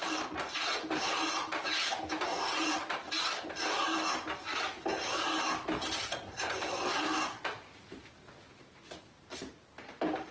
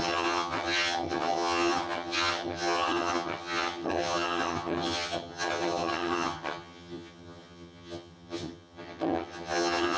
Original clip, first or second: first